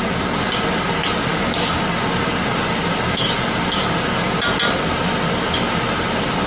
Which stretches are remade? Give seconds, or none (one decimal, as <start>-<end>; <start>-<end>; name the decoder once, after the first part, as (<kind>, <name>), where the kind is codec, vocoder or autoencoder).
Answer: 1.3-1.8 (codec, DAC)